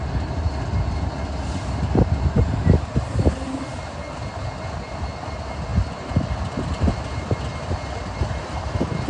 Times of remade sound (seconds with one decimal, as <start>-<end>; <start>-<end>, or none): none